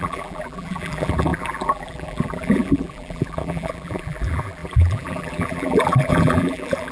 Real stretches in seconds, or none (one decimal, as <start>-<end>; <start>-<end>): none